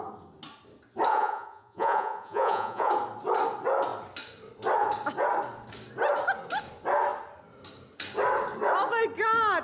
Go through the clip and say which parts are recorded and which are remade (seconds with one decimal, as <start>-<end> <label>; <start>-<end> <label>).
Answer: 0.0-1.1 recorded; 1.1-2.9 remade; 2.9-9.6 recorded